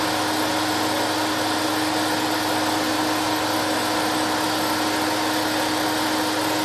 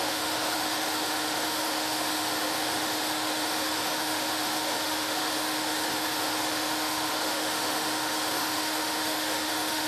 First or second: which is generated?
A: second